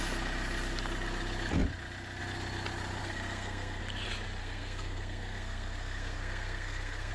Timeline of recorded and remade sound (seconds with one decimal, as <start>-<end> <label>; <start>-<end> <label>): 0.0-3.0 recorded; 3.0-3.8 remade; 3.8-4.4 recorded; 4.4-7.1 remade